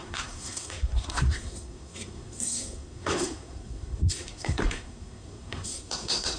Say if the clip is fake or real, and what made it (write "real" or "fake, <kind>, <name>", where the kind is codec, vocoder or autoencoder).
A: fake, codec, SNAC